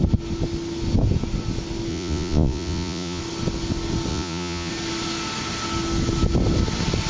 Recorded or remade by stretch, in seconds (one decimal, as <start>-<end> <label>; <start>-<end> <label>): 0.0-1.9 recorded; 1.9-3.2 remade; 3.2-4.1 recorded; 4.1-4.7 remade; 4.7-7.1 recorded